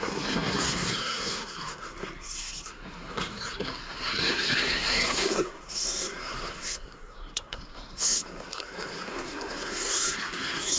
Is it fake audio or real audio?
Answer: fake